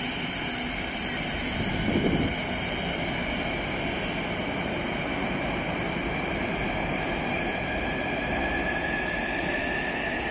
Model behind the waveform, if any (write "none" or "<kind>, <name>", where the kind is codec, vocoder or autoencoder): none